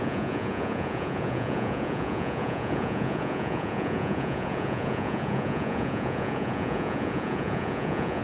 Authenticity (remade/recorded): remade